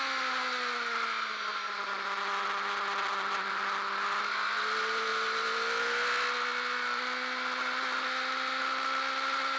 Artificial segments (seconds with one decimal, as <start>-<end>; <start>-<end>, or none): none